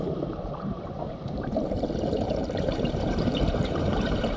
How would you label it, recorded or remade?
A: remade